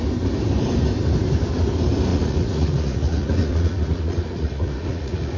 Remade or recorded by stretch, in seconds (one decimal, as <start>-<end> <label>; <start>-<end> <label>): 0.0-2.1 recorded; 2.1-5.4 remade